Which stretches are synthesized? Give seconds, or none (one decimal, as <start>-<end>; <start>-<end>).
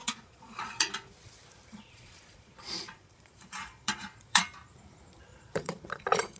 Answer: 0.0-1.1; 1.7-4.4; 5.3-6.4